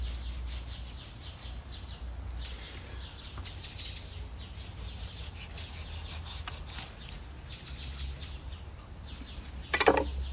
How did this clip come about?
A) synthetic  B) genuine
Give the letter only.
B